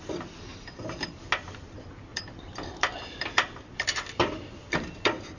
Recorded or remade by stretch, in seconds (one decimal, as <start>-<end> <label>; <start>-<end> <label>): 0.0-0.5 recorded; 0.5-1.1 remade; 1.1-2.1 recorded; 2.1-5.4 remade